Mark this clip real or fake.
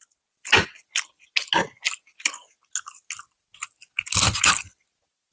real